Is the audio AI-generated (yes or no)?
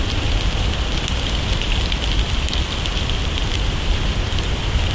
yes